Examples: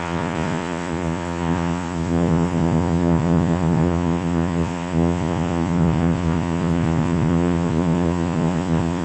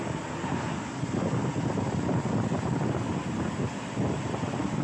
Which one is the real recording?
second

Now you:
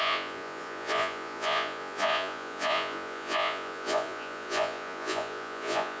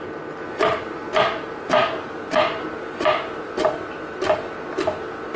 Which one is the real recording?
second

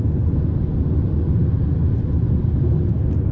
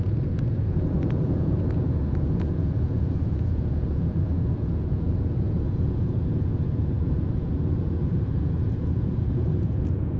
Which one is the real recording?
first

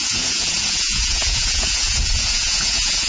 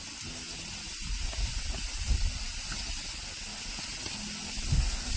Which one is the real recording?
second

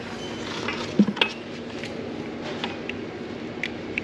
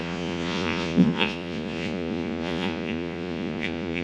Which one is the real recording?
first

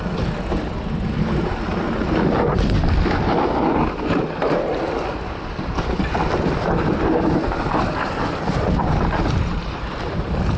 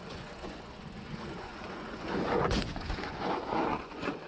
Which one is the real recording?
first